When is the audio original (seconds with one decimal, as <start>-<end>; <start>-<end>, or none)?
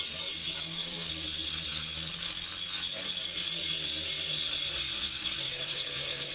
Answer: 0.0-0.4; 1.1-5.1